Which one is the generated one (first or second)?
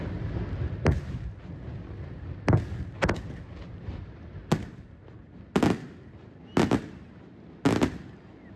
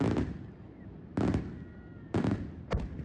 second